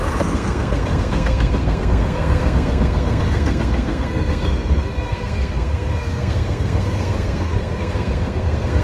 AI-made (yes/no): yes